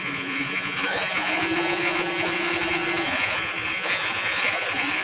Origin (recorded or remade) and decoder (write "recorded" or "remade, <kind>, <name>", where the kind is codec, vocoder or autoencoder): remade, vocoder, Vocos